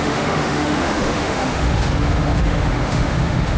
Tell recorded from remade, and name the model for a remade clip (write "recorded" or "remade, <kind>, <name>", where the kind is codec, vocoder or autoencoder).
remade, autoencoder, DAC-VAE